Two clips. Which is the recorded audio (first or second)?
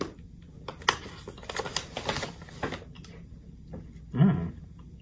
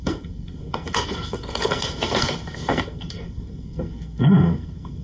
first